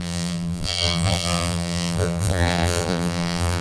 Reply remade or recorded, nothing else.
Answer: remade